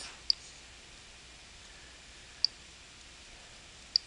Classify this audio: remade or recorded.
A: recorded